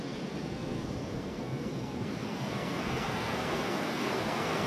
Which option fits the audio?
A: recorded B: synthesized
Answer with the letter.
B